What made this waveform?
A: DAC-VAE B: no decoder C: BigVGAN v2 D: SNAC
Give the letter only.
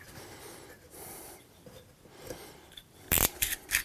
C